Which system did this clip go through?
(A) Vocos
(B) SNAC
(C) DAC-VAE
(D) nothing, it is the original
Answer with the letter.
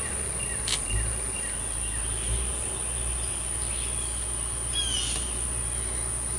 D